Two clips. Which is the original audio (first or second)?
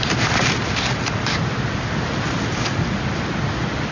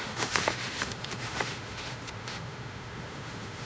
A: first